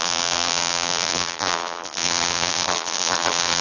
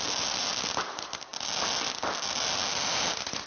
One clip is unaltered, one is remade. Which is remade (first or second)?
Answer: first